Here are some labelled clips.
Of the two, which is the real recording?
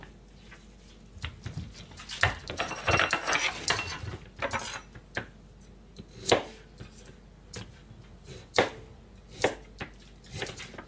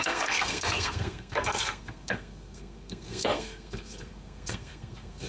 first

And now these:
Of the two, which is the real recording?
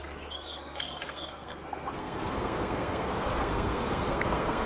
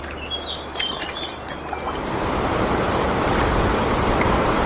second